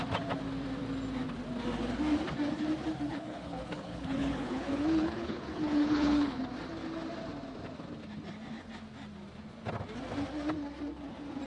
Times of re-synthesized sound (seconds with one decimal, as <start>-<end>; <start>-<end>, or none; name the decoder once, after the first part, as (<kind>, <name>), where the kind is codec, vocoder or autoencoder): 3.1-6.4 (codec, HILCodec)